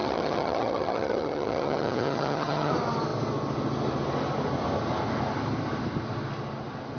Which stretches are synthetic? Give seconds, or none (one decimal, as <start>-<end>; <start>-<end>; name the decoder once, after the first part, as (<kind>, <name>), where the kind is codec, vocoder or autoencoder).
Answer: 0.0-2.7 (vocoder, HiFi-GAN)